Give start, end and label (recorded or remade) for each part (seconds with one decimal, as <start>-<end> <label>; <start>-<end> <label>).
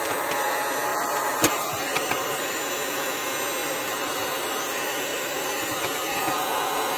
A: 0.0-0.9 recorded; 0.9-2.7 remade; 2.7-3.6 recorded; 3.6-4.6 remade; 4.6-5.1 recorded; 5.1-5.8 remade; 5.8-7.0 recorded